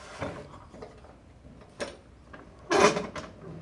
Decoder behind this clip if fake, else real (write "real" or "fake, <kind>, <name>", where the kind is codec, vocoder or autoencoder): real